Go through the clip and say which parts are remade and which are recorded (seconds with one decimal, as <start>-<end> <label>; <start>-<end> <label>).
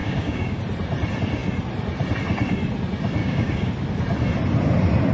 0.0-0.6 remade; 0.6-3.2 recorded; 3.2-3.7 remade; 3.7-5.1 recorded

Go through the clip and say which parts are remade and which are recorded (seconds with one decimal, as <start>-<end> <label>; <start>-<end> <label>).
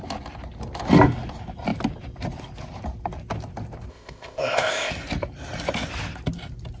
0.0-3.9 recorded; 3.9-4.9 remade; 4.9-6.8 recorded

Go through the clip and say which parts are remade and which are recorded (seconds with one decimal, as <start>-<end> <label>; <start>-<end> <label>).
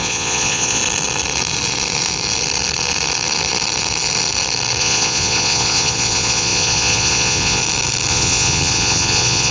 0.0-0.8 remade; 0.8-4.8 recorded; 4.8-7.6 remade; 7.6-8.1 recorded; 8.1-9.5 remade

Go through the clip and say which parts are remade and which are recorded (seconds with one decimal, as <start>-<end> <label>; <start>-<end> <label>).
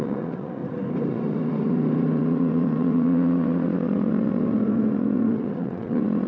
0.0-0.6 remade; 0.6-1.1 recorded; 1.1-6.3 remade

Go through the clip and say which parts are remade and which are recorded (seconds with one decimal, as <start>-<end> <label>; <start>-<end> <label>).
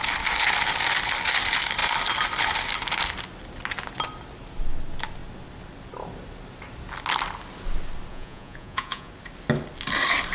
0.0-8.1 recorded; 8.1-9.1 remade; 9.1-10.3 recorded